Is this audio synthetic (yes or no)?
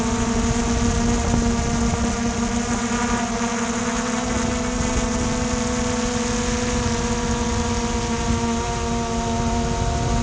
no